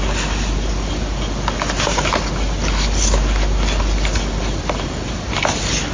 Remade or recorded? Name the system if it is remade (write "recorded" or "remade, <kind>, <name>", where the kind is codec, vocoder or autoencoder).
recorded